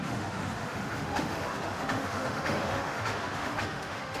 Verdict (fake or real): fake